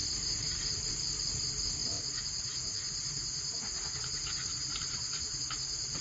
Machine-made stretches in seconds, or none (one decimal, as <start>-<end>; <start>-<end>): 0.0-0.9